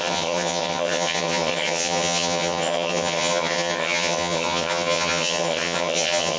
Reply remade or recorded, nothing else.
remade